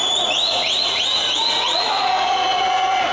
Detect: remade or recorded remade